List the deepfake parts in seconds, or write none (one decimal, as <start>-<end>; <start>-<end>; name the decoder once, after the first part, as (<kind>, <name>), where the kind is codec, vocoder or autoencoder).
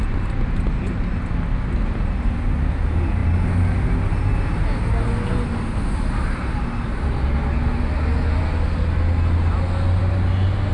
none